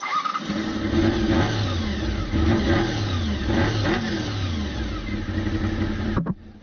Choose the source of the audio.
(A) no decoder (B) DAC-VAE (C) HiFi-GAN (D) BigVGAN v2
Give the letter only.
A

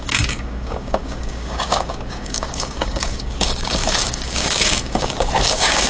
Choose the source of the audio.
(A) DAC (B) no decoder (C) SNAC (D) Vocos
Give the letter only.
A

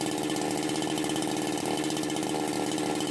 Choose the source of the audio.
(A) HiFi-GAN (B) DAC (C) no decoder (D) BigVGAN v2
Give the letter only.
C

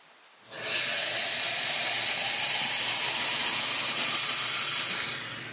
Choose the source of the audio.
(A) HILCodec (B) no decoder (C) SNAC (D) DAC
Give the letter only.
B